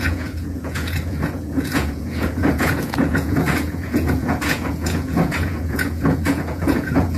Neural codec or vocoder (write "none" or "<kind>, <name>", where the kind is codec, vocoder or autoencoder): vocoder, Vocos